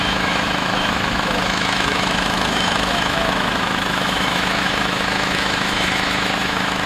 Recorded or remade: remade